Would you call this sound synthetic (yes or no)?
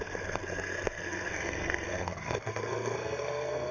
yes